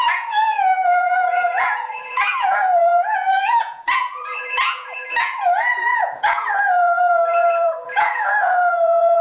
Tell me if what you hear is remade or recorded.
remade